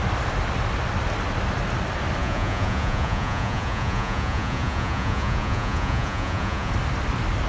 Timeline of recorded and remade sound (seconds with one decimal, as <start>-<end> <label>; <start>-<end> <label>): 0.0-2.2 recorded; 2.2-6.7 remade; 6.7-7.5 recorded